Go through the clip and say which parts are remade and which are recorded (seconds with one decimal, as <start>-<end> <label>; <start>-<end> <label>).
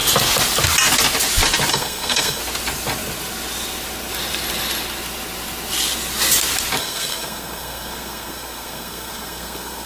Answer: 0.0-1.7 recorded; 1.7-2.4 remade; 2.4-6.8 recorded; 6.8-9.9 remade